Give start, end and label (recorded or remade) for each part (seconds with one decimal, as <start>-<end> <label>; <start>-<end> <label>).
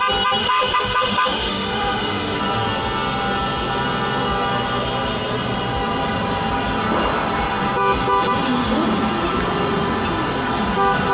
0.0-0.4 recorded; 0.4-2.4 remade; 2.4-11.1 recorded